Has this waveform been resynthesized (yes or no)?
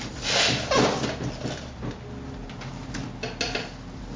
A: no